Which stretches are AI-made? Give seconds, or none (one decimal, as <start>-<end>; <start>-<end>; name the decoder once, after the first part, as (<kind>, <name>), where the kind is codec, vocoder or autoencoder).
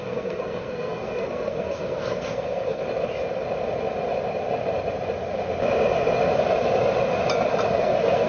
0.0-2.8 (codec, SNAC); 7.8-8.3